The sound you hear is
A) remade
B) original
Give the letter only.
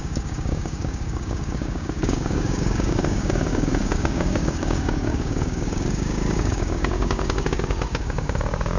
A